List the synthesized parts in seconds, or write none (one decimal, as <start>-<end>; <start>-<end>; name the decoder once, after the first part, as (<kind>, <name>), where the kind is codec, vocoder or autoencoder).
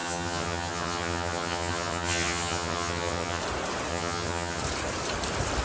0.0-3.4 (vocoder, HiFi-GAN); 3.9-4.6